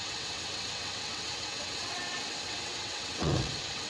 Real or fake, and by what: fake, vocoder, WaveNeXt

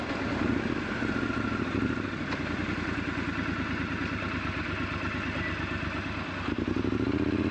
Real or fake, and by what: real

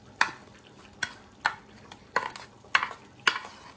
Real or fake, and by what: real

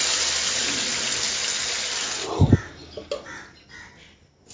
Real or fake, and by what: real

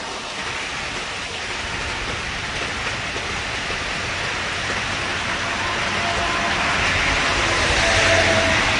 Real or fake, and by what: real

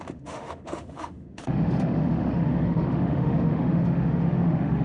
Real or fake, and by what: fake, autoencoder, DAC-VAE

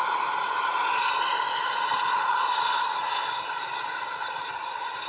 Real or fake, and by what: real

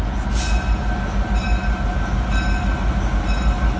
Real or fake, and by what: real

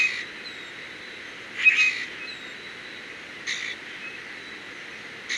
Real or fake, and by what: real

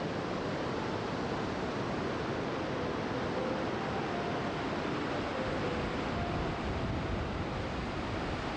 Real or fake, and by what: real